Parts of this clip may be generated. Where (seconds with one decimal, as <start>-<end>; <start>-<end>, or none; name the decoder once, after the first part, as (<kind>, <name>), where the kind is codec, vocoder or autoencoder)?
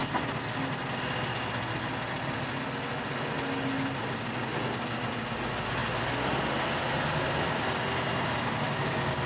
none